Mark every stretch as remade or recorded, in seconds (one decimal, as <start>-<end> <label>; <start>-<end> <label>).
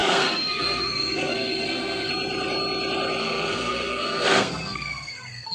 0.0-2.1 remade; 2.1-3.2 recorded; 3.2-5.5 remade